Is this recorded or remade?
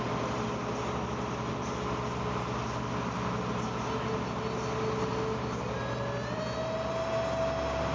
recorded